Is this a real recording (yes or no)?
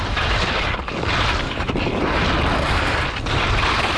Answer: yes